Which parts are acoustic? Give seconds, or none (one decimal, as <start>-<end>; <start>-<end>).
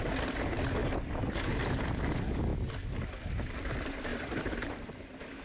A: 0.0-4.1; 4.7-5.4